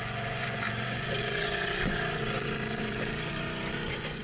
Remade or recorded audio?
remade